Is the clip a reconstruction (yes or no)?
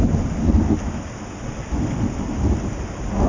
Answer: no